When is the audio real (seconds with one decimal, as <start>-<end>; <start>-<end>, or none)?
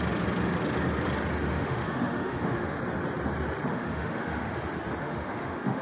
0.0-1.4; 2.8-3.7; 4.5-5.0